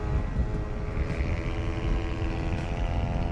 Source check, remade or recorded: recorded